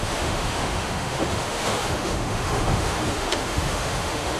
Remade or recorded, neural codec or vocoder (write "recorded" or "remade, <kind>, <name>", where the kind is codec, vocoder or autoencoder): remade, autoencoder, DAC-VAE